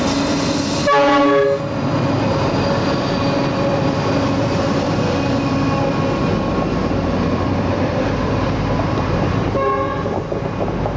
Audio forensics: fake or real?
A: real